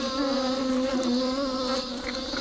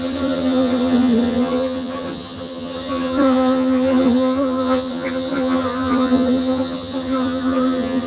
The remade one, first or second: second